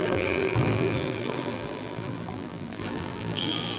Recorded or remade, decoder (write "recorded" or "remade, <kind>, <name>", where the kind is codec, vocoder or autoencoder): remade, vocoder, BigVGAN v2